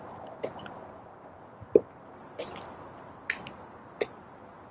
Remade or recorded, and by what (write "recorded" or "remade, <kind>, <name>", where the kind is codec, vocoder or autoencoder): recorded